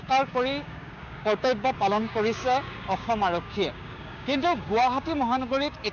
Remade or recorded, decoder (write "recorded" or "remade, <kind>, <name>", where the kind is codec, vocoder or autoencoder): remade, codec, DAC